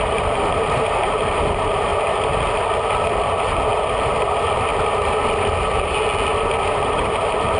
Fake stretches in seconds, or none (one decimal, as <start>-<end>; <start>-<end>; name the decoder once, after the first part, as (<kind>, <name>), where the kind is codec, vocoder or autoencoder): 0.0-1.9 (vocoder, BigVGAN v2); 4.3-4.7; 6.8-7.6